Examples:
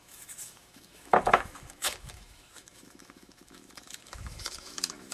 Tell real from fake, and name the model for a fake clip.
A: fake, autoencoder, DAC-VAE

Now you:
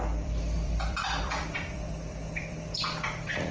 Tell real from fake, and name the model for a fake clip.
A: fake, vocoder, BigVGAN v2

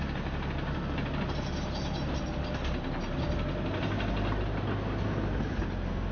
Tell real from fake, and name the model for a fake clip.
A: real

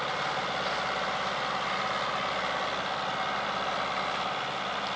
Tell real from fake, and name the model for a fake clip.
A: real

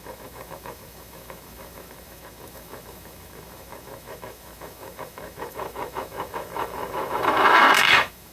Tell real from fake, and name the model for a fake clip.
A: fake, autoencoder, DAC-VAE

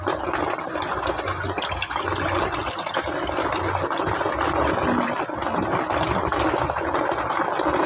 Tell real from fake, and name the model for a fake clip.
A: real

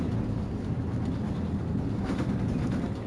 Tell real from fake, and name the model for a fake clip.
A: real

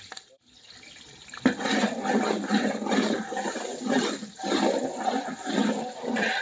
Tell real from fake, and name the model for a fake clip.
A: real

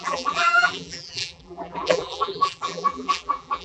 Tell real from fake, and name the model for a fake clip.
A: fake, vocoder, BigVGAN v2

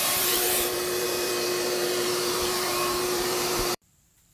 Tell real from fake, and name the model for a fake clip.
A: fake, vocoder, BigVGAN v2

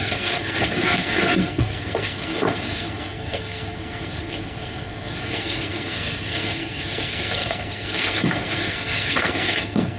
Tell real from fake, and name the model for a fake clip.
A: fake, codec, SNAC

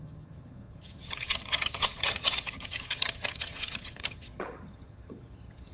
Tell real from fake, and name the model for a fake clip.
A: fake, vocoder, HiFi-GAN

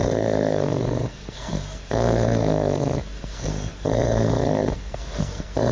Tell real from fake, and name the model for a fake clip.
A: fake, codec, SNAC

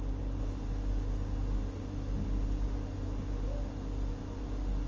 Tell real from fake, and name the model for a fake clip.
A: real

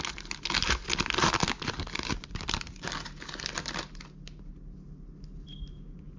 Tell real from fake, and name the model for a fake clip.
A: real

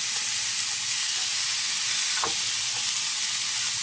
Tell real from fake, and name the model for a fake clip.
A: real